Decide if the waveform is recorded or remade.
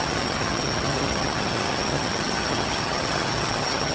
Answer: remade